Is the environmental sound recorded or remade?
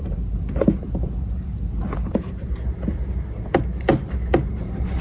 recorded